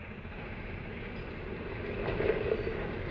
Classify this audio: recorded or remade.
recorded